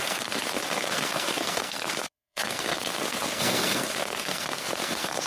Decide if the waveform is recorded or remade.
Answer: remade